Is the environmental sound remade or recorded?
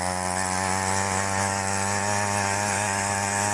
recorded